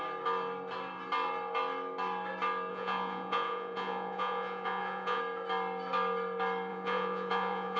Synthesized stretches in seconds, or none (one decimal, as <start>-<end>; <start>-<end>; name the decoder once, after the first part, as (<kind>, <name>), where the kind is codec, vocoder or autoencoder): 2.7-5.2 (vocoder, Vocos); 6.7-7.8